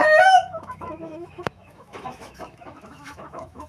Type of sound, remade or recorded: remade